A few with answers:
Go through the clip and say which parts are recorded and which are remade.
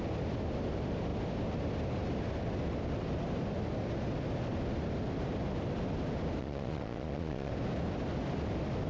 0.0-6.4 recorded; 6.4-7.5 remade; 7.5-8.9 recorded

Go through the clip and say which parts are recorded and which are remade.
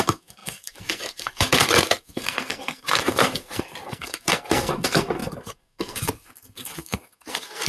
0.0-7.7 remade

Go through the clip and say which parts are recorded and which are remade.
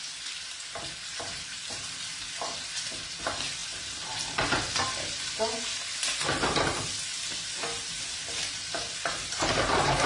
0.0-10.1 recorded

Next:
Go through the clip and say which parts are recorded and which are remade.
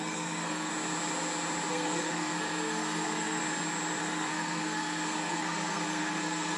0.0-0.7 remade; 0.7-1.7 recorded; 1.7-3.4 remade; 3.4-4.0 recorded; 4.0-6.6 remade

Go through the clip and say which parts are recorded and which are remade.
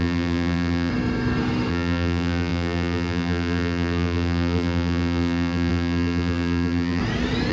0.0-0.9 remade; 0.9-1.7 recorded; 1.7-7.0 remade; 7.0-7.5 recorded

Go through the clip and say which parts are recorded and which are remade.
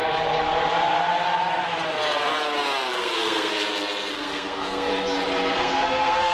0.0-2.9 recorded; 2.9-3.5 remade; 3.5-4.1 recorded; 4.1-4.9 remade; 4.9-5.6 recorded; 5.6-6.3 remade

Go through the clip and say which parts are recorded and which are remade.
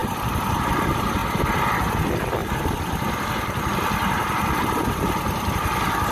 0.0-6.1 recorded